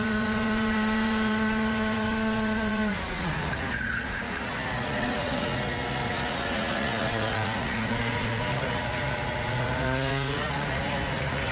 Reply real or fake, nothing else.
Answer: fake